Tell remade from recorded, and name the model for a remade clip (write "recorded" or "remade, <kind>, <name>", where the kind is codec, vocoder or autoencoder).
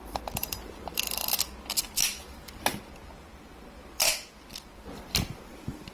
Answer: remade, vocoder, BigVGAN v2